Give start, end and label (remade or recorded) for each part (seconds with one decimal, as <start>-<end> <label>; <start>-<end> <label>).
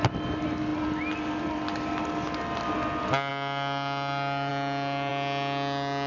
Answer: 0.0-6.1 recorded